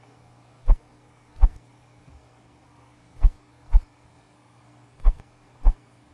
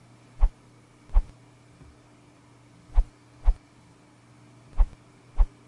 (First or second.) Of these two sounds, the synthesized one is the first